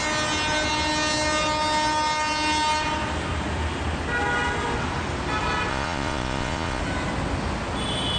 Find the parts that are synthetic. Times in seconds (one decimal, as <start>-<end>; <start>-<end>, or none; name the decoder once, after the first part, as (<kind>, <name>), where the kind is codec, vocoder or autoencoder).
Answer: 5.7-6.8 (vocoder, Vocos)